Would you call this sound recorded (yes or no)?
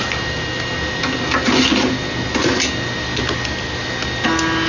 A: yes